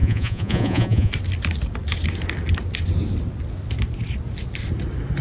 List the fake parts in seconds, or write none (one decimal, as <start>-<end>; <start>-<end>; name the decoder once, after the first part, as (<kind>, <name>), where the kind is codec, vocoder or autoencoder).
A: 0.0-1.1 (vocoder, Vocos)